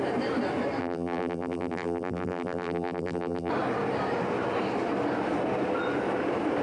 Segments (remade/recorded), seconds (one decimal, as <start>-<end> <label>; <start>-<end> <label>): 0.0-0.8 recorded; 0.8-3.5 remade; 3.5-6.6 recorded